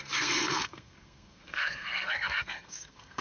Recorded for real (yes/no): no